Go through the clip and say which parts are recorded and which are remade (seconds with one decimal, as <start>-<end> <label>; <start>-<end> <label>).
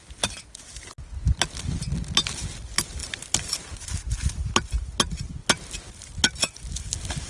0.0-7.3 recorded